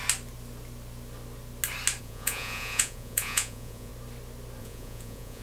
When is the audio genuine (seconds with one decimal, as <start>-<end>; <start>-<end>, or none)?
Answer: 0.0-2.0; 3.9-4.6